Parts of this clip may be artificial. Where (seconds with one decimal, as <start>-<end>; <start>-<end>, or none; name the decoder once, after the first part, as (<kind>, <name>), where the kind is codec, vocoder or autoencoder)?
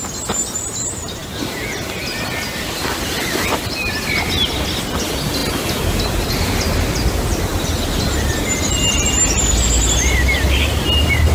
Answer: none